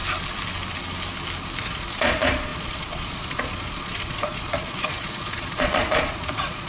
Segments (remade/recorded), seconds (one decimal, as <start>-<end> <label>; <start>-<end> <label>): 0.0-1.6 recorded; 1.6-6.7 remade